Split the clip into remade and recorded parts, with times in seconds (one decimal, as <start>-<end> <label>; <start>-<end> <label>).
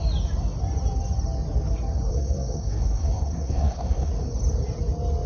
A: 0.0-2.1 recorded; 2.1-4.1 remade; 4.1-5.3 recorded